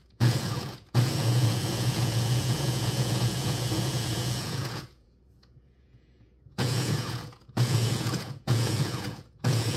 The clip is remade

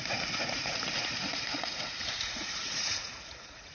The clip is remade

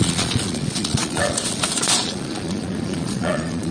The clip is remade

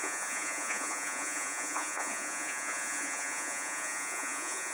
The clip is remade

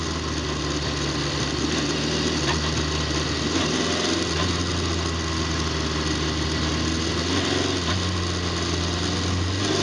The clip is recorded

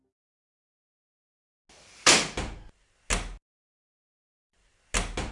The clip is recorded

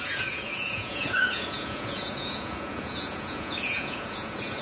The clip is remade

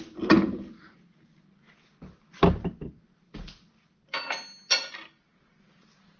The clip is recorded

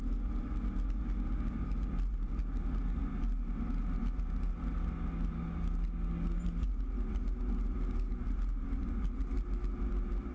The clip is recorded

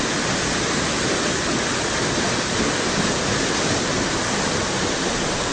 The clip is recorded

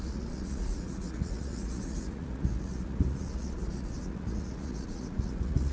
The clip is remade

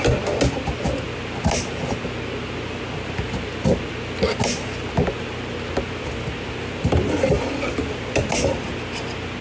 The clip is recorded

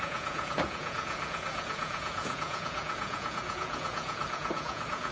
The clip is remade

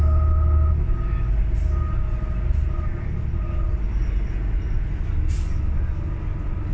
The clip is recorded